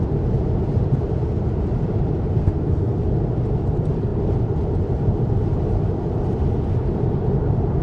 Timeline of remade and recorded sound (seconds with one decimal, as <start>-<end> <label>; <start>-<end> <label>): 0.0-2.4 recorded; 2.4-3.0 remade; 3.0-7.8 recorded